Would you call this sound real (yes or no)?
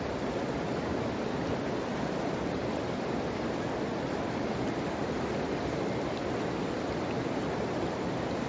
yes